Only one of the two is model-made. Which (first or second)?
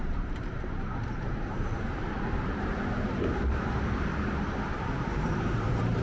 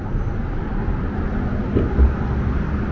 first